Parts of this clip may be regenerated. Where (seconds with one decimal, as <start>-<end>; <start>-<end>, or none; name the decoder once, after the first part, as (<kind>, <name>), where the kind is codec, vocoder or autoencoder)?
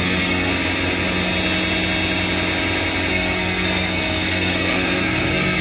0.0-0.5 (codec, SNAC); 3.1-5.6